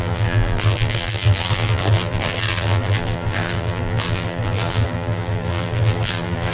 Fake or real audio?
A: fake